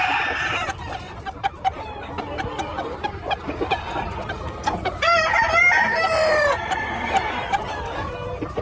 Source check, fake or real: fake